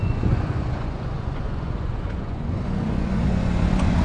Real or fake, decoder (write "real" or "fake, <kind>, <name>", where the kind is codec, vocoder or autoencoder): fake, vocoder, Vocos